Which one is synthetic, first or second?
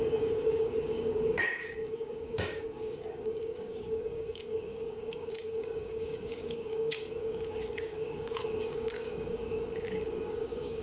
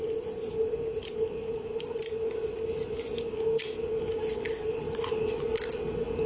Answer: first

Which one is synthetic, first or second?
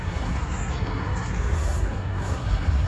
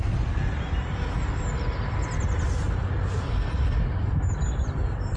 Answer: first